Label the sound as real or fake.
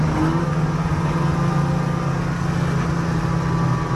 real